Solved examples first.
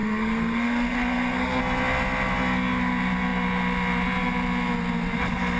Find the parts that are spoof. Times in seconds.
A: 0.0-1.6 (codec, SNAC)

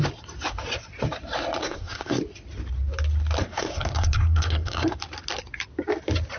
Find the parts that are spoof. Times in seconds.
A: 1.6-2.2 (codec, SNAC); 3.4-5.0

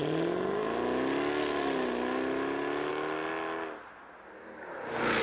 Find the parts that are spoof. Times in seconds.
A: none

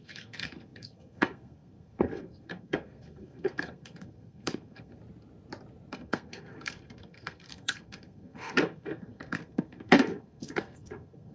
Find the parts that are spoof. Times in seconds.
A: 0.0-5.0 (codec, SNAC); 5.9-11.3

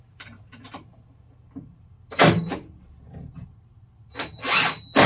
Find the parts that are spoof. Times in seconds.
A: none

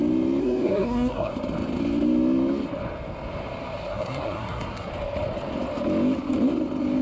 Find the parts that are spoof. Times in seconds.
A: 0.4-1.3 (codec, SNAC); 3.9-4.9

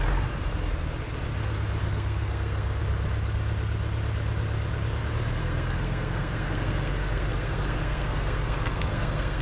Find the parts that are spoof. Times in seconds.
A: 1.8-2.8 (codec, SNAC); 5.4-9.4

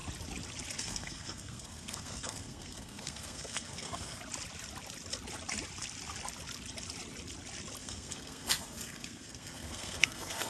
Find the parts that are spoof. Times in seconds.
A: 0.8-4.2 (codec, SNAC); 7.8-10.5